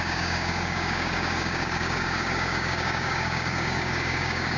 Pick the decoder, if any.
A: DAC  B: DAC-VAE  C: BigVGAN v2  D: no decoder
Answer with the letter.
A